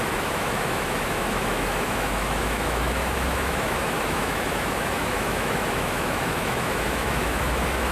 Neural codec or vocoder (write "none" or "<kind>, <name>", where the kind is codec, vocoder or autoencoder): autoencoder, DAC-VAE